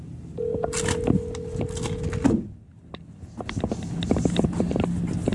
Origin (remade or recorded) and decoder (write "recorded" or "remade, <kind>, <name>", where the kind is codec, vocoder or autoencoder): recorded